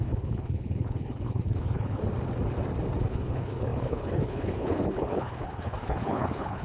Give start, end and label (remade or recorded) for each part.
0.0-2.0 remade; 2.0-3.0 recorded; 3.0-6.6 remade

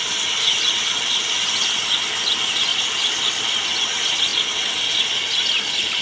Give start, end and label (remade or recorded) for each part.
0.0-2.7 recorded; 2.7-3.4 remade; 3.4-6.0 recorded

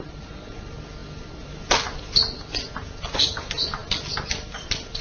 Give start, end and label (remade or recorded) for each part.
0.0-5.0 recorded